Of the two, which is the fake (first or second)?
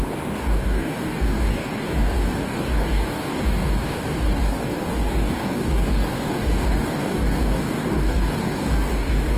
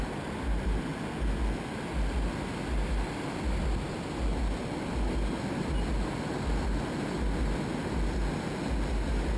first